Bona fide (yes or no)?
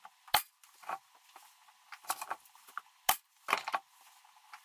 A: yes